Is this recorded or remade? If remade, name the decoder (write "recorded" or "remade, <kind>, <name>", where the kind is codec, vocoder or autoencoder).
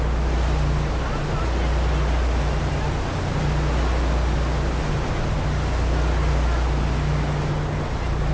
recorded